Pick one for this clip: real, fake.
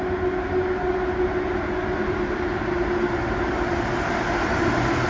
real